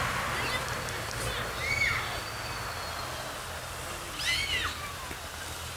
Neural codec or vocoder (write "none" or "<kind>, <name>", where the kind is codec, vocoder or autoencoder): none